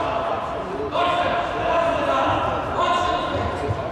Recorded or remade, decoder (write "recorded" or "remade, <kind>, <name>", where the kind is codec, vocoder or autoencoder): recorded